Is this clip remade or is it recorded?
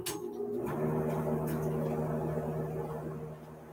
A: recorded